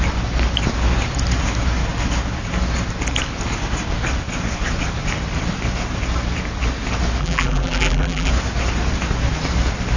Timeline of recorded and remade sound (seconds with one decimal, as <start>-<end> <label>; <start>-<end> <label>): 0.0-7.2 recorded; 7.2-8.3 remade; 8.3-10.0 recorded